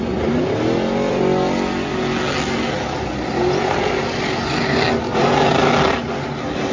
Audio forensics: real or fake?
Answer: real